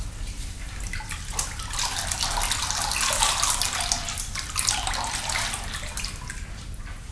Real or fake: real